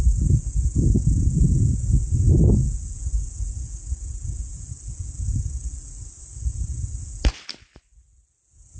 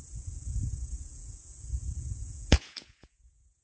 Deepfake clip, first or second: second